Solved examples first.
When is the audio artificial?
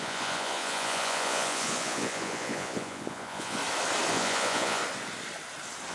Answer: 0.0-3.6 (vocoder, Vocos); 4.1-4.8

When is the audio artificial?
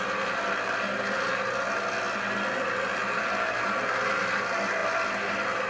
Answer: none